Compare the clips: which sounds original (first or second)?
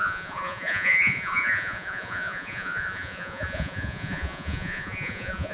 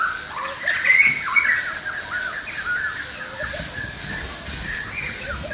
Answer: second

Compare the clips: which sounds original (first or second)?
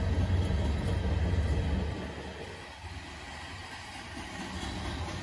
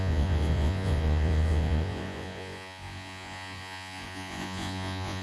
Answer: first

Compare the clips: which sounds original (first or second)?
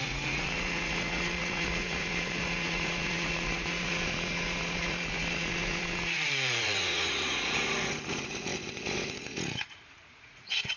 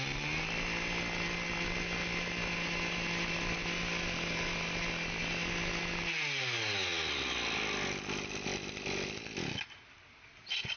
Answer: second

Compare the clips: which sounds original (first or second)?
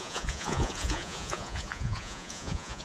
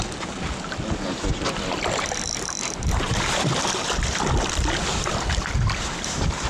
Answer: second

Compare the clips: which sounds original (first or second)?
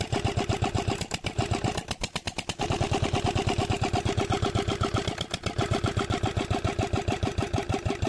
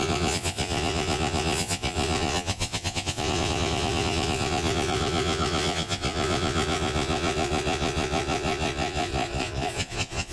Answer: first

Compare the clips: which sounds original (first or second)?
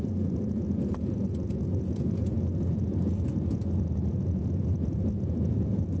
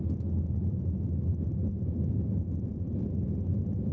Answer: second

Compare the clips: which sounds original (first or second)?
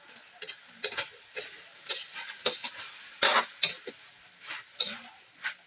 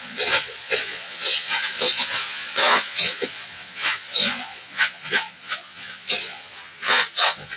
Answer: first